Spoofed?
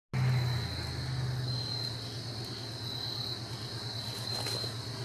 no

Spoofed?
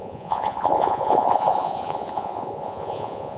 yes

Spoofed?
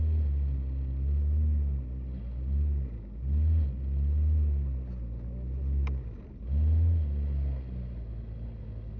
no